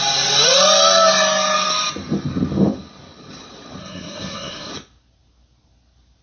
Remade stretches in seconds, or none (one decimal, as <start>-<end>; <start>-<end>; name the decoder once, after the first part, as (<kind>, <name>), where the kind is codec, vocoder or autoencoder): 3.8-4.7 (codec, SNAC)